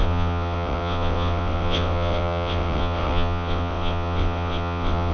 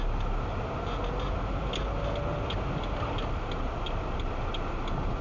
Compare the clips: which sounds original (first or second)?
second